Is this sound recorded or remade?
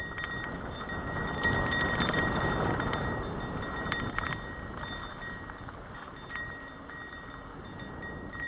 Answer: recorded